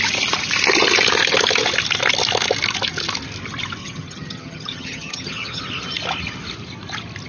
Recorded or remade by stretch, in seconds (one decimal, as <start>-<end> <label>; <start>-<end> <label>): 0.0-3.8 recorded; 3.8-5.6 remade; 5.6-7.3 recorded